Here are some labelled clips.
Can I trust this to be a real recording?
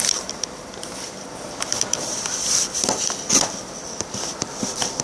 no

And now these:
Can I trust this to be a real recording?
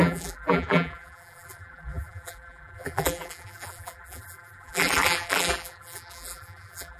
no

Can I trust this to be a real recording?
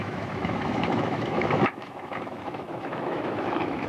no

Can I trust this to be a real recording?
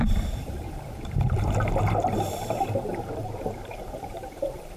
no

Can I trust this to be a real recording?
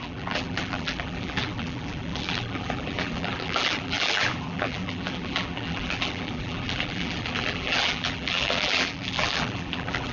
no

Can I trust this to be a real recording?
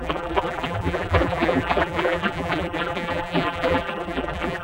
no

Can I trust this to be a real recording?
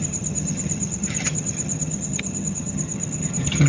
no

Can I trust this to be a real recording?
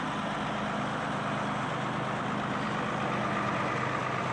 yes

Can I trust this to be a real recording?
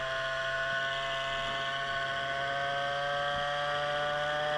yes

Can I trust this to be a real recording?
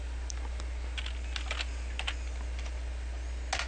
yes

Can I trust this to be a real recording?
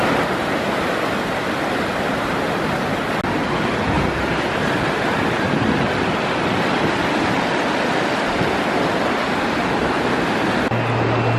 yes